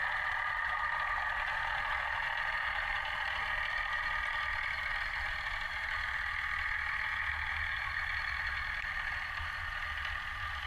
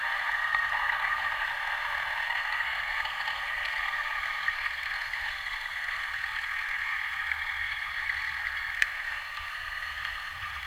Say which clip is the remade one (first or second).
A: second